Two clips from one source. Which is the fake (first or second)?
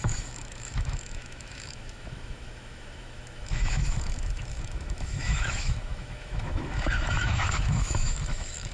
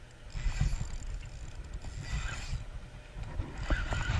first